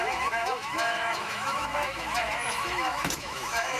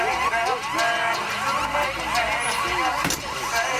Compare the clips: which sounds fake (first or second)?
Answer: first